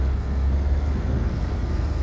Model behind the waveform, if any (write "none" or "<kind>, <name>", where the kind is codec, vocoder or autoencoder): codec, SNAC